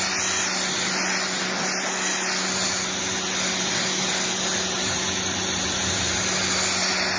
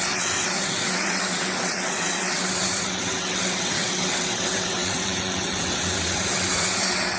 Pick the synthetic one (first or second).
second